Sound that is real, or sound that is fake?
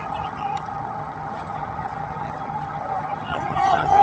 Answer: fake